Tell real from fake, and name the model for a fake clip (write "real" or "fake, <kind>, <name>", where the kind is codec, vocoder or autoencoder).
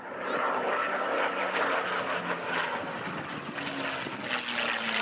real